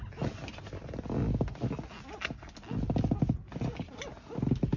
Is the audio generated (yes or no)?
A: no